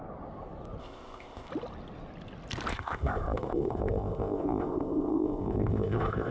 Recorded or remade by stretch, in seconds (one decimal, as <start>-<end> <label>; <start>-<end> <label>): 0.0-0.8 recorded; 0.8-1.5 remade; 1.5-2.7 recorded; 2.7-6.3 remade